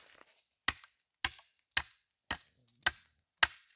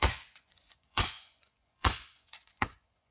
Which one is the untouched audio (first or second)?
first